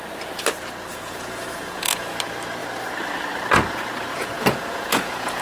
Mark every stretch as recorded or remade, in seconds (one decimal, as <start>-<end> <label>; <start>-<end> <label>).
0.0-0.9 recorded; 0.9-2.1 remade; 2.1-4.1 recorded; 4.1-5.4 remade